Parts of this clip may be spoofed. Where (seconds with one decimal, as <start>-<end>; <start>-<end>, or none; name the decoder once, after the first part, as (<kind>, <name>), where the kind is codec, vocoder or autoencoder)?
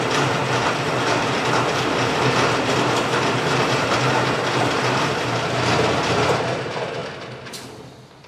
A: 0.0-7.0 (vocoder, BigVGAN v2)